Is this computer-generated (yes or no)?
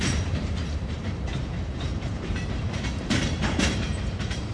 yes